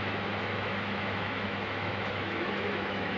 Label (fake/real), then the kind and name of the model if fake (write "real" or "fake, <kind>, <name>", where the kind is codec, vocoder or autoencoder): fake, autoencoder, DAC-VAE